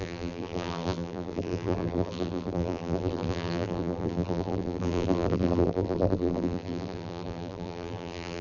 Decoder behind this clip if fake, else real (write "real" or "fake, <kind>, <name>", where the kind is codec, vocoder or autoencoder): fake, vocoder, BigVGAN v2